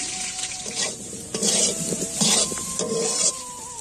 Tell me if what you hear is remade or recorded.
remade